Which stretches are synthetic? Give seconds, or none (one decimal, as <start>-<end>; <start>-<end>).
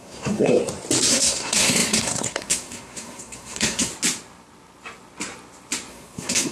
0.0-0.6; 1.1-3.9; 5.9-6.5